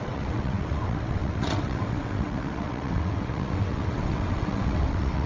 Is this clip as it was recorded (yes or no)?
no